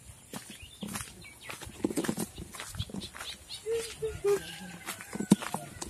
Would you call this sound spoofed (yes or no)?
no